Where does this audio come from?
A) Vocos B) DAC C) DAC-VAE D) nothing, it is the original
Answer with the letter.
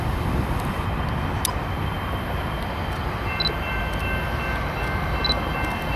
D